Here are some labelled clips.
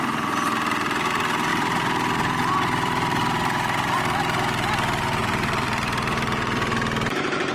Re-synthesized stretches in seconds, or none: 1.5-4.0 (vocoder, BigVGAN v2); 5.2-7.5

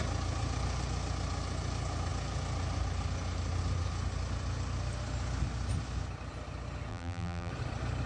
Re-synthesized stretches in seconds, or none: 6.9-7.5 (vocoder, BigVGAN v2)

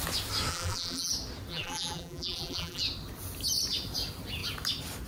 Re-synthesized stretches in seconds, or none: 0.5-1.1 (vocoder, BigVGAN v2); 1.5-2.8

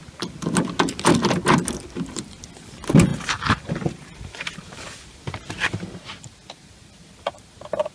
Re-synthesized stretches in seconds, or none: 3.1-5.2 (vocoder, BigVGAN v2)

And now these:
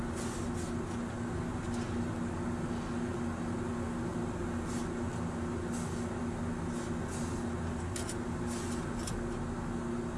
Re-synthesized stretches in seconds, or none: none

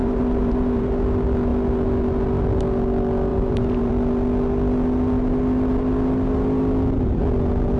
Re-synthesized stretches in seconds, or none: 0.0-0.8 (vocoder, BigVGAN v2); 3.3-3.9